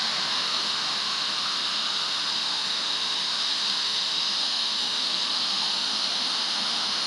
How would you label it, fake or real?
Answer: fake